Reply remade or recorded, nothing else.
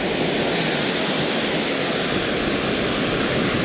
recorded